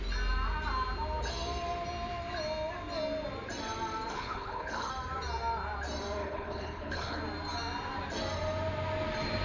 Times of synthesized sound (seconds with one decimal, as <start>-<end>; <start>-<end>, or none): 4.1-4.9; 6.2-7.2